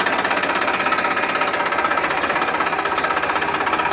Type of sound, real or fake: real